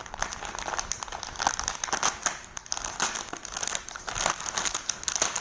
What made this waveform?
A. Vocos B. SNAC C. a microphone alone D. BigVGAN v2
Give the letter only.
C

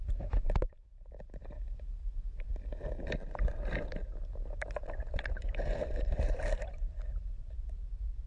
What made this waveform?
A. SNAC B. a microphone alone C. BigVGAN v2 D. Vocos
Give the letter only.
C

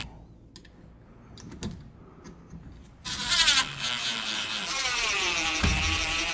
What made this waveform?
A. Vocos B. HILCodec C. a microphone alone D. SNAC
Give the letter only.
C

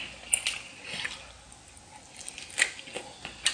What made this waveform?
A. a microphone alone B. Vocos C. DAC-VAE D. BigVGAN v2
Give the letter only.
A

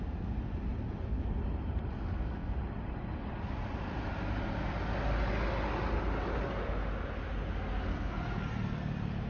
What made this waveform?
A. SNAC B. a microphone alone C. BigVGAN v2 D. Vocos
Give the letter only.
B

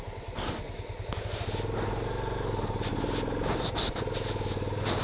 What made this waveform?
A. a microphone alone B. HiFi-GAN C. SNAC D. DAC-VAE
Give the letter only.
A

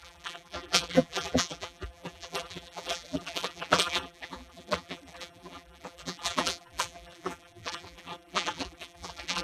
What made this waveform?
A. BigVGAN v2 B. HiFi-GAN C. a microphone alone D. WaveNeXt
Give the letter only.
A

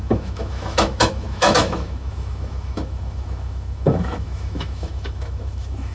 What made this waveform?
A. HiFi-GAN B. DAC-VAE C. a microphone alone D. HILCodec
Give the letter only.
B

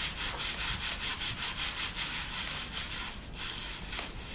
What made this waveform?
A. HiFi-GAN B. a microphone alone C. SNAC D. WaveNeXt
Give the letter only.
B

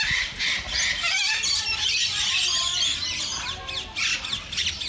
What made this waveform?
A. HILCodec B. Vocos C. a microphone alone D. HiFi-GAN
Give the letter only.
C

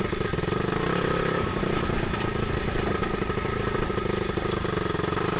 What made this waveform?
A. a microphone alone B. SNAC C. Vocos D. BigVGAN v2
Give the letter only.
A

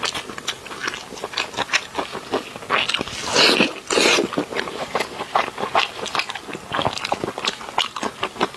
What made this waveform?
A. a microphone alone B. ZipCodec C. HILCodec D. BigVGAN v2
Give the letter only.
A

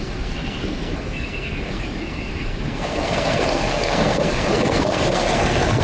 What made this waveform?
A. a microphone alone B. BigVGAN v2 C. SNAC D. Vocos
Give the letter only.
C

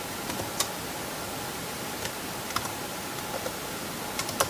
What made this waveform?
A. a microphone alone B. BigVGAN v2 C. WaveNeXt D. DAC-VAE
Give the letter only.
B